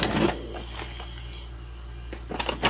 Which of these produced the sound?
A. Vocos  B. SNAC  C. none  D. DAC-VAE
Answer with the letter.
C